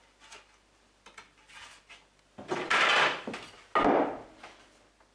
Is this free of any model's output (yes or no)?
yes